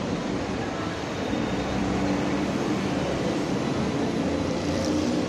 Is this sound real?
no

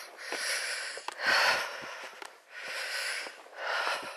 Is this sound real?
yes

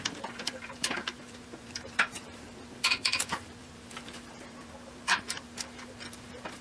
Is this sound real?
no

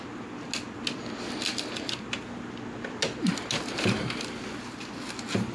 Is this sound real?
yes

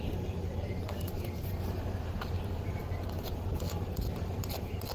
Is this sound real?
no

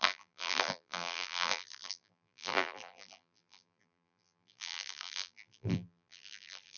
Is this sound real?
no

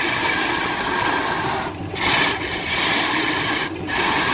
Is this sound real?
yes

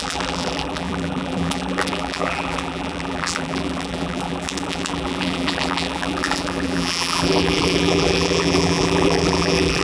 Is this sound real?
no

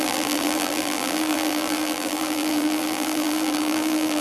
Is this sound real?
no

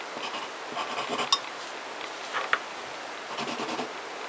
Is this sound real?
yes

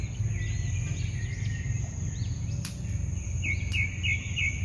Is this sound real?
yes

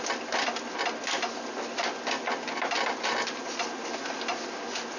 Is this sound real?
yes